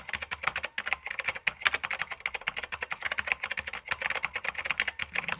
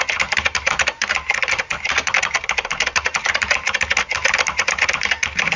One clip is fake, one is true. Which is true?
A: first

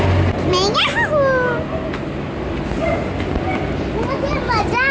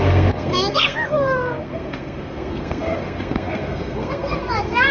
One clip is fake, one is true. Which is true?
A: first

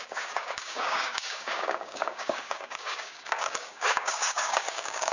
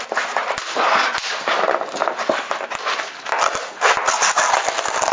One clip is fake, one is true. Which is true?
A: second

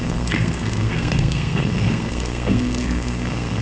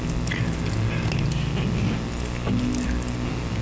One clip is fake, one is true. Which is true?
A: second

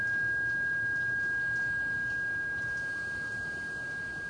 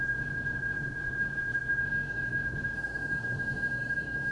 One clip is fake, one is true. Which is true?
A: first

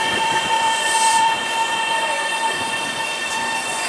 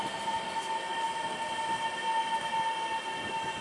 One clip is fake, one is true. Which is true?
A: second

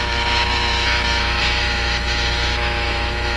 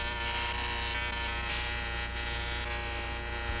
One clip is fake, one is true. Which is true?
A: second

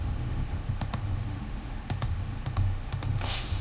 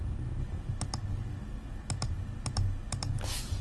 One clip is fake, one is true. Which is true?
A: second